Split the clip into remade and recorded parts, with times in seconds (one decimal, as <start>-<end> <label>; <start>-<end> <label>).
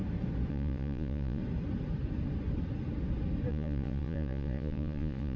0.0-0.5 recorded; 0.5-1.4 remade; 1.4-3.5 recorded; 3.5-5.4 remade